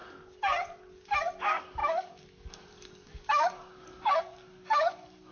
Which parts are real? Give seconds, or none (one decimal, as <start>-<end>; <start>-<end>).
0.0-1.4